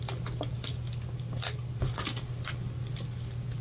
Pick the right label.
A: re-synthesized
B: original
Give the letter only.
B